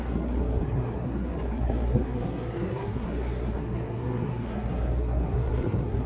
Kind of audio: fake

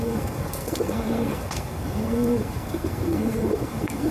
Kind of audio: fake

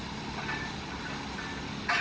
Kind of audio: real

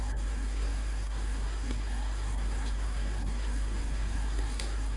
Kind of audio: fake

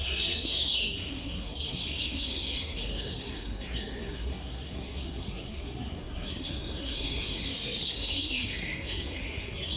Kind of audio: fake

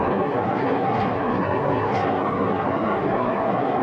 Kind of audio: fake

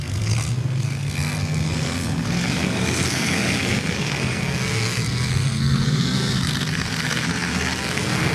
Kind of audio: fake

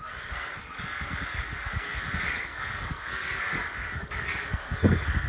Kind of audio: fake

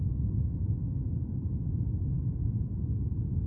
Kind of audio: real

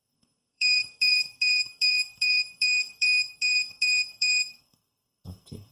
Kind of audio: fake